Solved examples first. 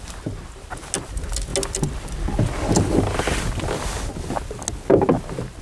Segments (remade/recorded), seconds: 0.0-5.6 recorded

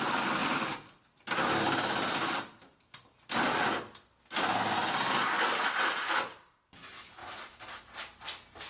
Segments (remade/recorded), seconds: 0.0-8.7 recorded

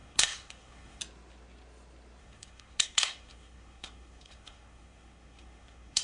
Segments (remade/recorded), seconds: 0.0-1.0 remade; 1.0-2.2 recorded; 2.2-6.0 remade

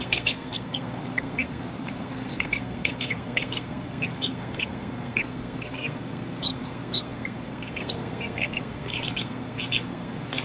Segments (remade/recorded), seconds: 0.0-10.4 remade